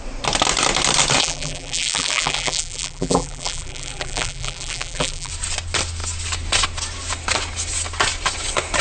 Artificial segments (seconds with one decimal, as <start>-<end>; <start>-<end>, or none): 1.2-5.3